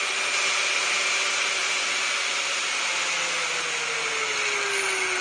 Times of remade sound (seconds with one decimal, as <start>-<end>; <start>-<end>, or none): none